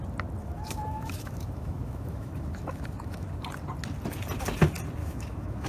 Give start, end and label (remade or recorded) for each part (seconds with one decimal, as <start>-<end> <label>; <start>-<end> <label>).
0.0-0.4 recorded; 0.4-3.3 remade; 3.3-5.0 recorded; 5.0-5.7 remade